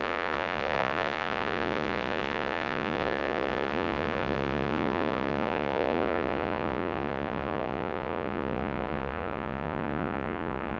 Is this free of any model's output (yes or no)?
no